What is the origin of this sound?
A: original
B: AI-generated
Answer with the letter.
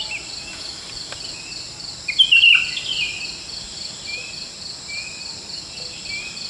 A